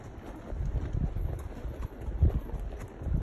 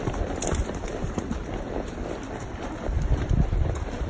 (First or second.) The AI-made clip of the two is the second